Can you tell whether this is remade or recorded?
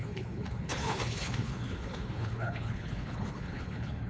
remade